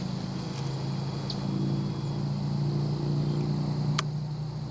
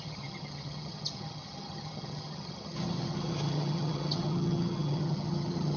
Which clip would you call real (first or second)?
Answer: first